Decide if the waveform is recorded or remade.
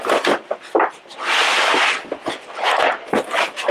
recorded